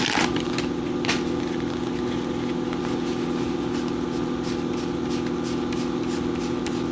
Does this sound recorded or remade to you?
recorded